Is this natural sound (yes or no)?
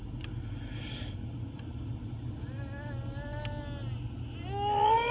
yes